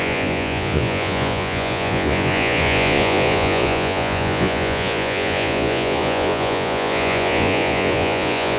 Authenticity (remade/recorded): remade